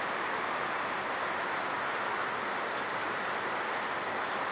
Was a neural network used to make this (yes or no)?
no